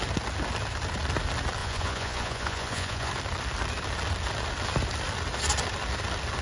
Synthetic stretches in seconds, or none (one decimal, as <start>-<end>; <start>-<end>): 1.6-3.1

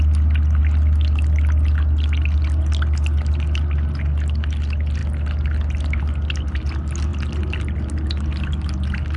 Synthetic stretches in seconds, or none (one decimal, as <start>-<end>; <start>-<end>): none

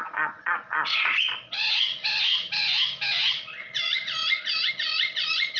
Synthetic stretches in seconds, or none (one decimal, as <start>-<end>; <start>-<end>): 0.0-2.3; 3.3-5.6

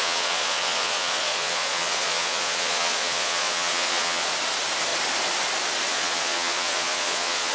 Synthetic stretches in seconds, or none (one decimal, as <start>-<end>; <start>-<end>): 0.0-4.3; 5.9-7.5

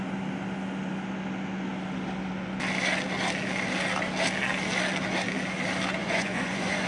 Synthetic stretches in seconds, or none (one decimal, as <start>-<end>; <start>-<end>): 6.0-6.9

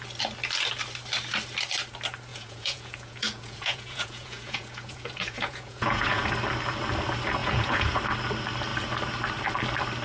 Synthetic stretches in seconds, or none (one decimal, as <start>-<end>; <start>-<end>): 2.3-6.3; 7.4-8.0

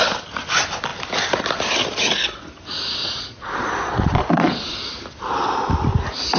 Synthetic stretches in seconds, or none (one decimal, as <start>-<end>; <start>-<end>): 3.0-4.7